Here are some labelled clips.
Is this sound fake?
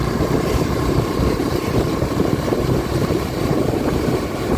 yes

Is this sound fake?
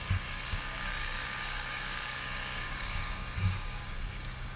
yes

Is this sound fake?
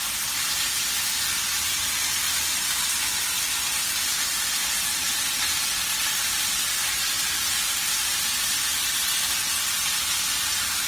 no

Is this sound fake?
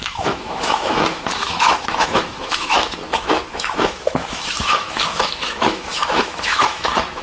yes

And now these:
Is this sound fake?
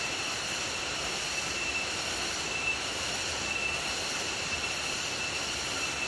no